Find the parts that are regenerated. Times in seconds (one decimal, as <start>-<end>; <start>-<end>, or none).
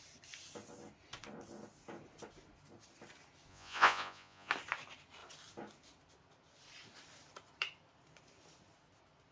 3.5-4.5